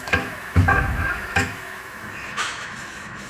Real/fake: fake